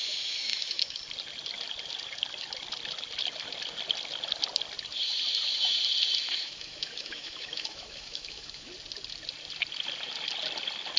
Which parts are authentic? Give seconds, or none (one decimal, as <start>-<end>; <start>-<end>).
0.0-0.5; 1.0-6.4; 8.7-11.0